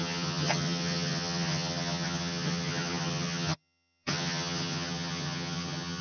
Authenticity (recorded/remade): remade